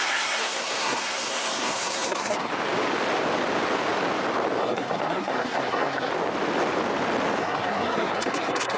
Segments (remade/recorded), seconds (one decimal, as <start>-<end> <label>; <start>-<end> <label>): 0.0-2.5 remade; 2.5-4.6 recorded; 4.6-6.1 remade; 6.1-7.4 recorded; 7.4-8.8 remade